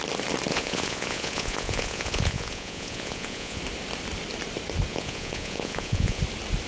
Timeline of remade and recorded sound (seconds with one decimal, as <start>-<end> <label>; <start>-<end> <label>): 0.0-0.5 recorded; 0.5-3.6 remade; 3.6-4.9 recorded; 4.9-6.2 remade; 6.2-6.7 recorded